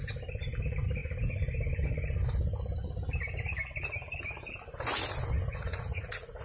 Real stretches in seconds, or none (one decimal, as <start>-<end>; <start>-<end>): 0.0-5.5